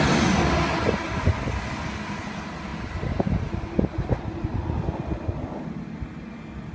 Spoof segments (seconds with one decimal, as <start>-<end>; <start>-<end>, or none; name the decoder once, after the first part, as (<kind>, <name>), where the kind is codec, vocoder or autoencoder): none